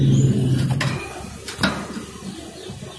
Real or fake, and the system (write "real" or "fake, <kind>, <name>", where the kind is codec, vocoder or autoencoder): real